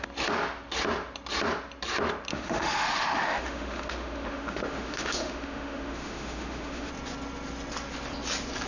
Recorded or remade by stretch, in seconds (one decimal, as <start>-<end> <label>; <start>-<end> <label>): 0.0-2.3 recorded; 2.3-6.9 remade; 6.9-8.7 recorded